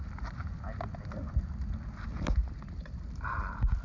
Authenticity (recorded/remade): recorded